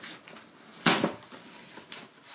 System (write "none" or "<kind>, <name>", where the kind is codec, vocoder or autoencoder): none